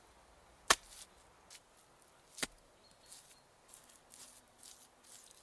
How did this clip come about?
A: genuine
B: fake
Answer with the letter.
A